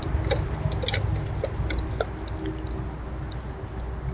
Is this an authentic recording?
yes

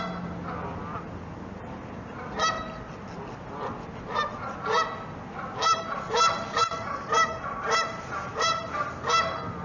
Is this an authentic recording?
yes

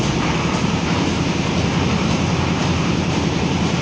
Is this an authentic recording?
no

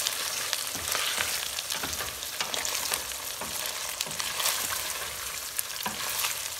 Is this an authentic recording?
yes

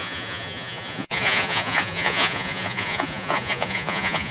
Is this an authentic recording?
no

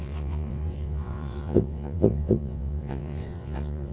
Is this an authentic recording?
no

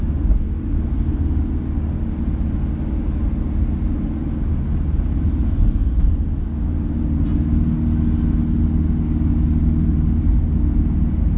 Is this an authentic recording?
yes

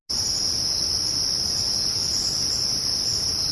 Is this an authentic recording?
yes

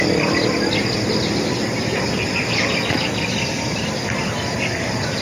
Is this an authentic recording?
yes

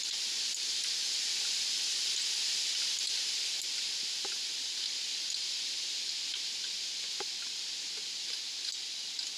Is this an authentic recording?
yes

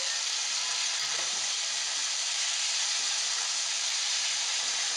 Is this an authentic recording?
no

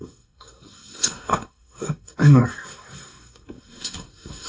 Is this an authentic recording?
no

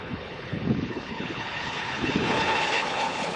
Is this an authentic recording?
no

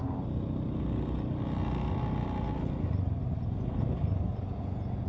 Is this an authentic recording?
yes